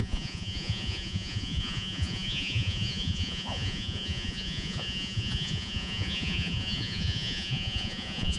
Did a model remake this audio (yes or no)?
yes